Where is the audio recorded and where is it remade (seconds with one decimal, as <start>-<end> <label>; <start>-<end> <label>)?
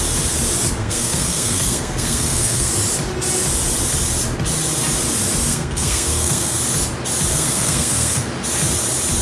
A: 0.0-0.8 recorded; 0.8-2.7 remade; 2.7-5.5 recorded; 5.5-6.6 remade; 6.6-7.3 recorded; 7.3-8.3 remade; 8.3-9.2 recorded